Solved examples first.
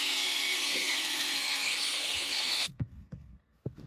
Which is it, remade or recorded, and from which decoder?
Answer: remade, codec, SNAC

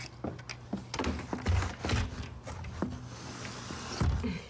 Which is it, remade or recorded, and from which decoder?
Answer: recorded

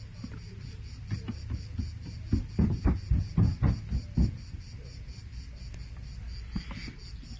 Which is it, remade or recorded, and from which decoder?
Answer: recorded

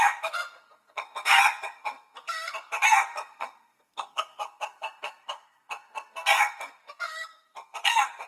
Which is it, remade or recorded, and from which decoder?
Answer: remade, codec, SNAC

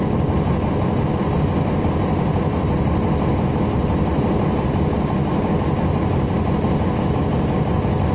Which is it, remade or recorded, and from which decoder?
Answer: recorded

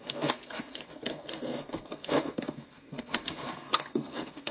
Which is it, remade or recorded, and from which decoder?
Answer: remade, codec, SNAC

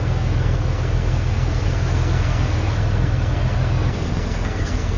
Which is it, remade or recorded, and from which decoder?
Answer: remade, codec, SNAC